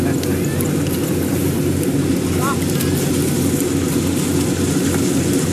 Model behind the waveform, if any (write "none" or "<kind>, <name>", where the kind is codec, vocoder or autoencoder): none